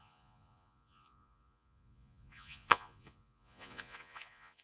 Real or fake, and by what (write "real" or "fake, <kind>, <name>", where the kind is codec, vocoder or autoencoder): fake, vocoder, Vocos